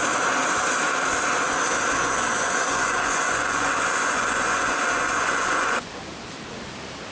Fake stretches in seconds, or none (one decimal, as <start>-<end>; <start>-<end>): 2.0-5.9